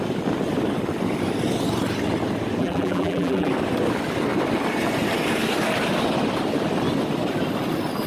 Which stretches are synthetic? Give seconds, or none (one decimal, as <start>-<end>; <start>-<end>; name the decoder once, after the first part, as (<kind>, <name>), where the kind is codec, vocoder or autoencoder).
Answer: 2.6-3.5 (vocoder, BigVGAN v2)